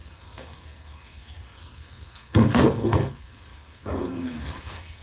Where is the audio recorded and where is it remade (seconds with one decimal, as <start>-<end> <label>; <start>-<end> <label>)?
0.0-5.0 remade